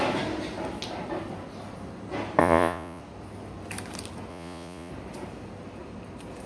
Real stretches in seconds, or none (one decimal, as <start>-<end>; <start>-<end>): 0.0-2.4; 3.0-4.3; 4.9-6.5